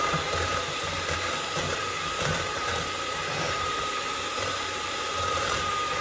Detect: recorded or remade remade